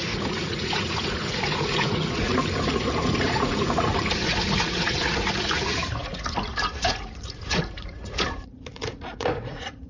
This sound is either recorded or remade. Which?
remade